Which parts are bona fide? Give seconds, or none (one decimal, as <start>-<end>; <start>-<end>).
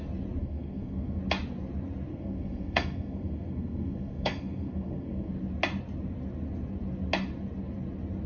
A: 0.0-0.4; 1.2-2.1; 5.3-8.3